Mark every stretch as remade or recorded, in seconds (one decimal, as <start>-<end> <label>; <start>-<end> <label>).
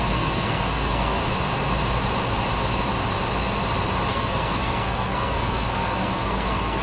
0.0-1.2 remade; 1.2-4.1 recorded; 4.1-6.8 remade